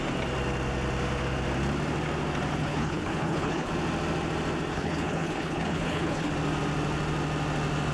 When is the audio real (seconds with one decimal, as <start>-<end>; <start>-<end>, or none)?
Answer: 0.0-2.6; 3.7-4.7; 6.3-7.9